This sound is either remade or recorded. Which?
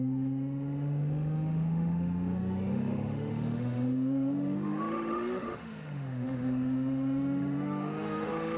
remade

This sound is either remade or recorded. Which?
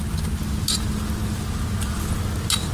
recorded